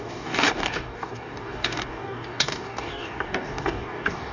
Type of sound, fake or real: fake